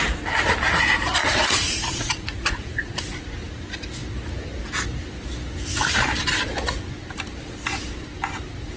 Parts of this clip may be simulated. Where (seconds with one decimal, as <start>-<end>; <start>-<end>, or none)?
1.2-3.0